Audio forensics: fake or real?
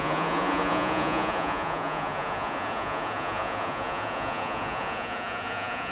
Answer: fake